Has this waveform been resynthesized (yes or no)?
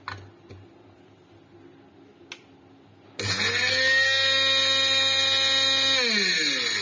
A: no